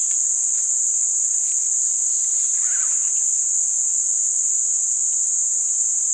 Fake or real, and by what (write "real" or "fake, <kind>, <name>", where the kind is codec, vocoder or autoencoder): real